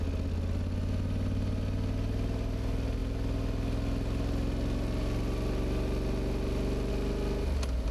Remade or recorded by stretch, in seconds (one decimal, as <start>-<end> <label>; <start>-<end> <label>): 0.0-7.9 recorded